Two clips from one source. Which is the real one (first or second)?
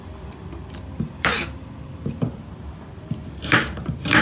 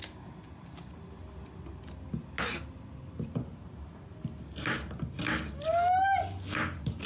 second